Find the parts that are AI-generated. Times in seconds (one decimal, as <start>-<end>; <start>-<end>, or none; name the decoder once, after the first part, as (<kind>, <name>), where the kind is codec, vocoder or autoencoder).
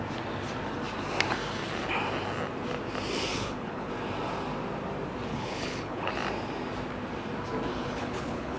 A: 3.3-3.9 (codec, HILCodec); 5.3-6.1; 7.7-8.6